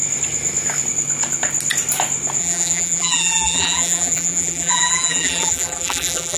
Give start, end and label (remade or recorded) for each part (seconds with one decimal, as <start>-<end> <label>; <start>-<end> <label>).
0.0-2.4 recorded; 2.4-6.4 remade